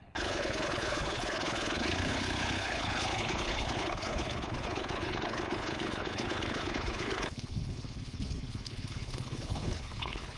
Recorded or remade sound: remade